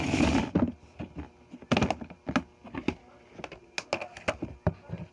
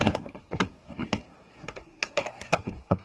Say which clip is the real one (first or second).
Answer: first